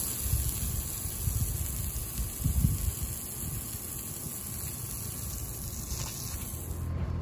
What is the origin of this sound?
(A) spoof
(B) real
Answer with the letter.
B